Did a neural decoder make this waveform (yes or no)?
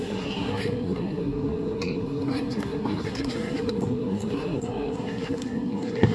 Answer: yes